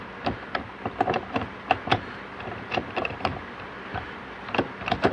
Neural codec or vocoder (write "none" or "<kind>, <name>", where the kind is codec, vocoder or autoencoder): vocoder, BigVGAN v2